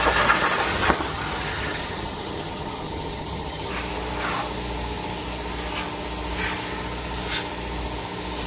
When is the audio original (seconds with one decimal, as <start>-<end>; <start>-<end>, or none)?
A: 0.0-0.7; 3.7-8.5